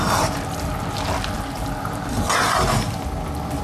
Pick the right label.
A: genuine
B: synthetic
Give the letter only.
A